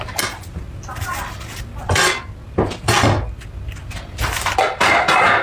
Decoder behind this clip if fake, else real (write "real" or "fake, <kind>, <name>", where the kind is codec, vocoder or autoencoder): real